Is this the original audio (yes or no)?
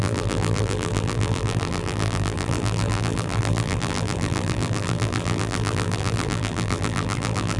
no